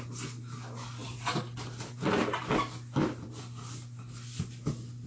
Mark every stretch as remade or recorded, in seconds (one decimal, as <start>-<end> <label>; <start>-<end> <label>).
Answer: 0.0-5.1 recorded